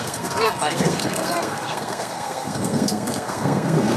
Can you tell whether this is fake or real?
fake